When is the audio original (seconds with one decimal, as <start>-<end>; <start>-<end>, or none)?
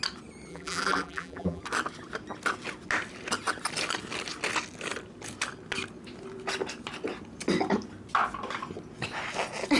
0.0-0.5; 1.6-9.8